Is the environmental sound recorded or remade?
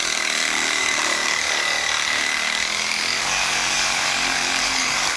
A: remade